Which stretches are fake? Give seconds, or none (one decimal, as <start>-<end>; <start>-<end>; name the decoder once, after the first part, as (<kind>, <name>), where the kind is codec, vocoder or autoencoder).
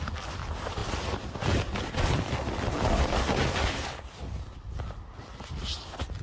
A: none